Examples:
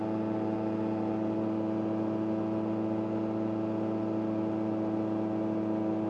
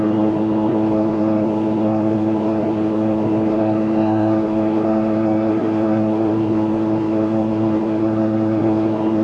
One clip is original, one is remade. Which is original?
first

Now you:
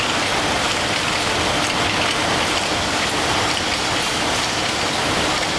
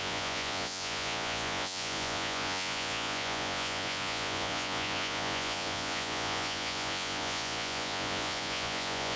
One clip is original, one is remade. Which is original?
first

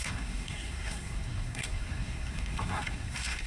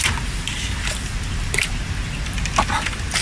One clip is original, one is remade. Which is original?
second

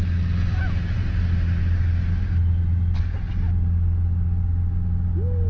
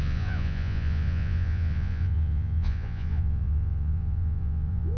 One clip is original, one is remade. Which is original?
first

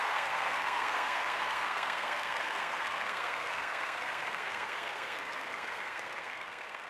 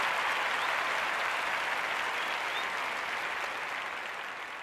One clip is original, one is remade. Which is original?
second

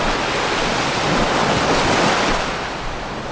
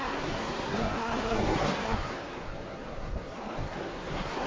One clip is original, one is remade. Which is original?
first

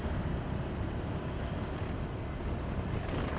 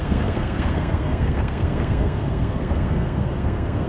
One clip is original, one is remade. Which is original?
first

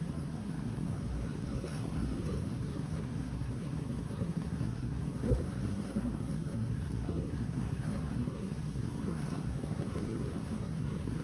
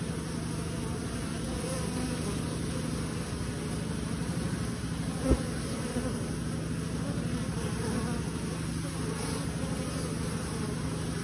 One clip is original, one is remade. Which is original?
second